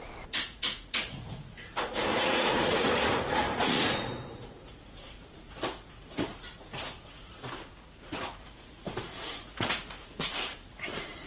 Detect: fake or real fake